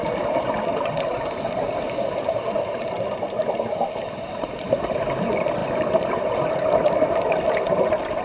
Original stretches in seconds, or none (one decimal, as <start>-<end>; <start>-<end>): 0.0-8.2